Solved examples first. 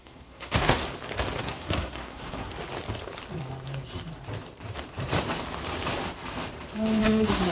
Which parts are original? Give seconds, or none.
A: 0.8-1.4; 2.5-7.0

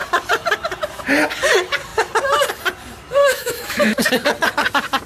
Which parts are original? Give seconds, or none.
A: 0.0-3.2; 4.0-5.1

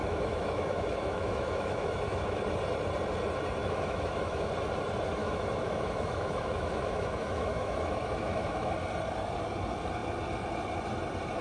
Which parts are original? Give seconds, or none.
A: 2.4-3.6; 4.5-5.2; 8.7-11.4

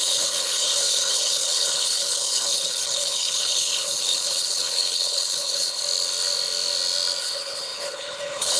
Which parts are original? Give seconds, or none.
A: 5.8-7.2

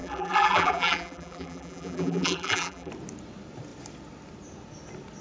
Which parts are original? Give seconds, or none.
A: 2.9-5.2

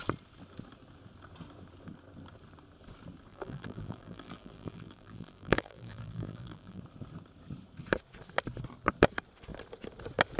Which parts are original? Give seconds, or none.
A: 0.0-3.3; 6.8-10.4

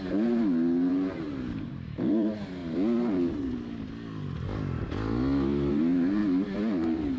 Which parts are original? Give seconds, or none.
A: 2.6-5.7; 6.2-7.2

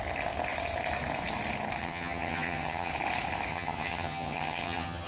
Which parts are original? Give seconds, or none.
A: 0.0-1.8; 2.9-3.5